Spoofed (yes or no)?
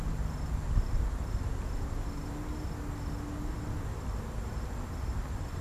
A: no